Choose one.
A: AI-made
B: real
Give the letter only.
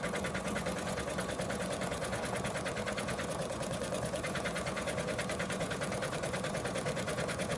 A